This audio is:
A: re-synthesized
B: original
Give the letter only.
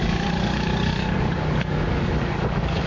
A